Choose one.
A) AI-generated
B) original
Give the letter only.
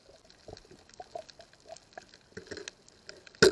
B